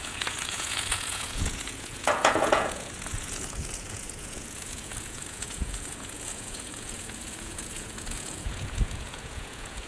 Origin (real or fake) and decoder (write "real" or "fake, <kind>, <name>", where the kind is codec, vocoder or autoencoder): fake, vocoder, Vocos